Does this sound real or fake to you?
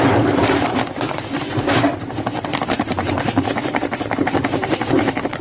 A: fake